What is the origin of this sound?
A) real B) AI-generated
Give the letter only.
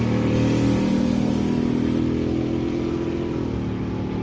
A